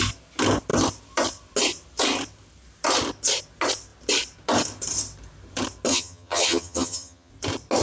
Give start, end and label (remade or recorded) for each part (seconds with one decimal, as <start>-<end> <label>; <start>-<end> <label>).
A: 0.0-5.9 recorded; 5.9-7.3 remade; 7.3-7.8 recorded